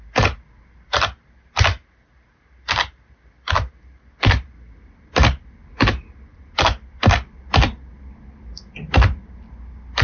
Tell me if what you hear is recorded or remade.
recorded